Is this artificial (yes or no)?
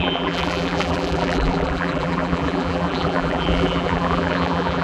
yes